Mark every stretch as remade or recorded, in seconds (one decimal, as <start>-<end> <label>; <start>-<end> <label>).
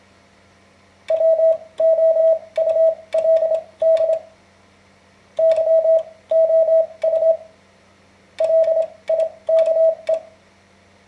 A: 0.0-11.1 recorded